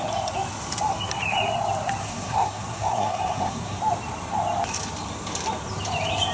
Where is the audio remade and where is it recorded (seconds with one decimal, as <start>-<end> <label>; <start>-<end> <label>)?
0.0-2.0 recorded; 2.0-3.8 remade; 3.8-6.3 recorded